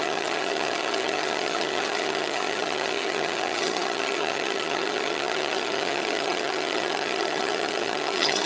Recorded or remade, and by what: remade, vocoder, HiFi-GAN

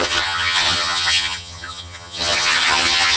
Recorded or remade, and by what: remade, vocoder, HiFi-GAN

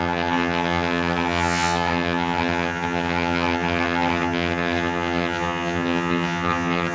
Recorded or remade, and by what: remade, vocoder, HiFi-GAN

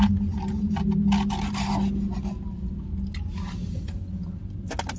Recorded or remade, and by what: recorded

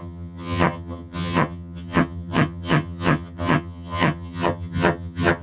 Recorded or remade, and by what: remade, vocoder, HiFi-GAN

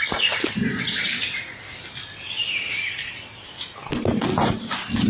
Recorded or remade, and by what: recorded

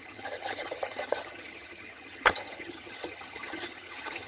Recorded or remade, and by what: remade, vocoder, HiFi-GAN